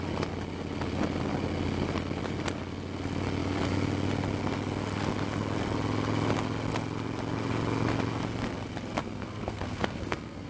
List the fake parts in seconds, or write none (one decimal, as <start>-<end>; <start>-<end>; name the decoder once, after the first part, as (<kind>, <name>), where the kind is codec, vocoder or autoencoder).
9.0-10.5 (codec, SNAC)